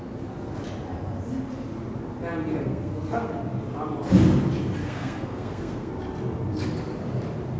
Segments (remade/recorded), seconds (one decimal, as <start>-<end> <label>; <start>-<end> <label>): 0.0-2.5 recorded; 2.5-3.3 remade; 3.3-4.8 recorded; 4.8-5.9 remade; 5.9-7.6 recorded